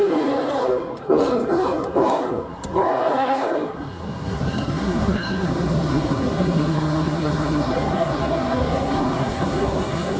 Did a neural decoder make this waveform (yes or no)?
yes